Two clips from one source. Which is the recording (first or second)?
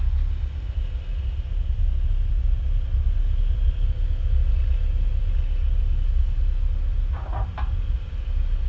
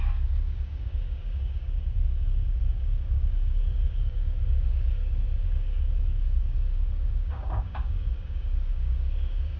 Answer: first